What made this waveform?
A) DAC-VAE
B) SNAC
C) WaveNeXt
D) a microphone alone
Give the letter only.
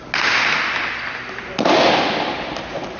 D